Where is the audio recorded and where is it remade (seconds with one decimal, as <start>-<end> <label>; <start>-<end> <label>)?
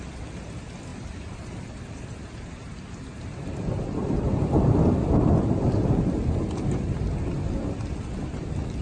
0.0-0.9 recorded; 0.9-6.1 remade; 6.1-8.8 recorded